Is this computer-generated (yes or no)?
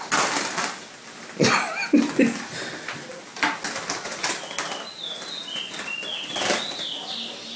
no